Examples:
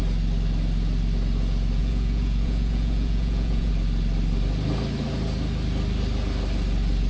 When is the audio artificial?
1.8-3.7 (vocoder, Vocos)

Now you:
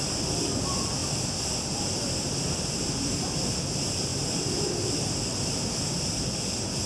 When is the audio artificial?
0.0-6.9 (vocoder, BigVGAN v2)

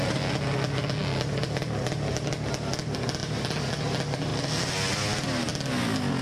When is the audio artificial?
none

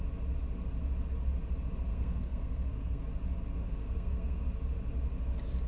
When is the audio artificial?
1.9-3.0 (codec, SNAC); 3.6-4.4